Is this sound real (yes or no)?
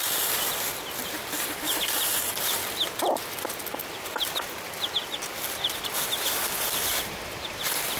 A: no